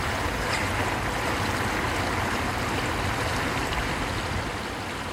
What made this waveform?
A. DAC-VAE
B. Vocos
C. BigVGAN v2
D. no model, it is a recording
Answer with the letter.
D